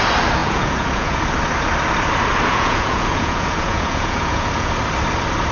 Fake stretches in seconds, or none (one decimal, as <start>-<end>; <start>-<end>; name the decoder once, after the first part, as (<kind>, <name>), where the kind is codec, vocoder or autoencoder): 0.4-1.2 (vocoder, Vocos); 2.5-4.7